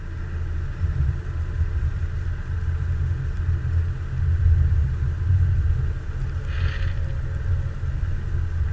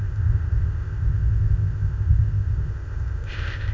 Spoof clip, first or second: second